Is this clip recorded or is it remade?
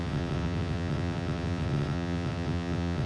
remade